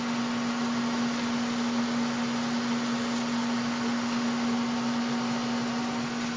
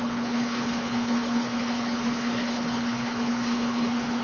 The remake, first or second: second